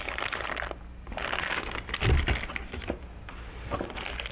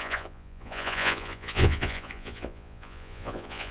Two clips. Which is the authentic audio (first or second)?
first